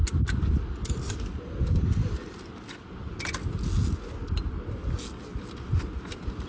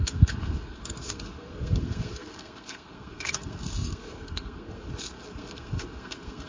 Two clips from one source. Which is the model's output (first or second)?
second